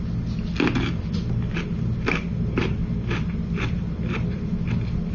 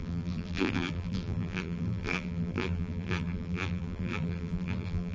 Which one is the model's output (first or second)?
second